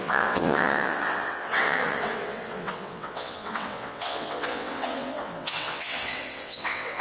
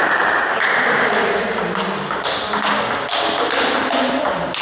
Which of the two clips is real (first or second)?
second